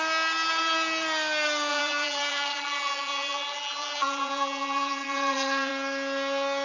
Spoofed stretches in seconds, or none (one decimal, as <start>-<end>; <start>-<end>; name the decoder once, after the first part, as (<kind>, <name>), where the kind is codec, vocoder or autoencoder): 1.7-5.7 (vocoder, BigVGAN v2)